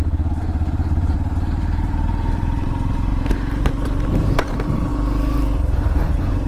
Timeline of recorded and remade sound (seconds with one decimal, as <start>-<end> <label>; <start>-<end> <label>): 0.0-4.9 remade; 4.9-5.8 recorded; 5.8-6.5 remade